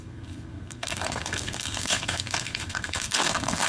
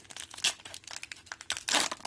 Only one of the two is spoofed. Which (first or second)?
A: first